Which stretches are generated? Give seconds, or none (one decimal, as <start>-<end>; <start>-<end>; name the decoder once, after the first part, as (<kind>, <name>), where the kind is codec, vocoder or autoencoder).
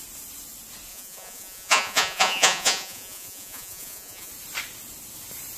0.9-4.3 (vocoder, Vocos)